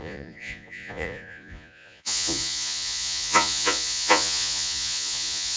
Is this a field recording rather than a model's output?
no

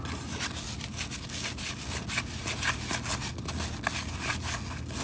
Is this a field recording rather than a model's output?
yes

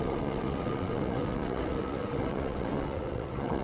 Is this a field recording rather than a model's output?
no